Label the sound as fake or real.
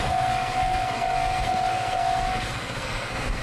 fake